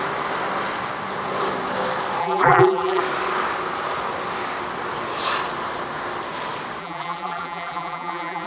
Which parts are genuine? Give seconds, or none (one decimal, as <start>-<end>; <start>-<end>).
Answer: 0.0-2.2; 3.0-6.8